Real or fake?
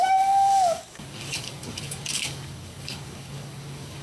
fake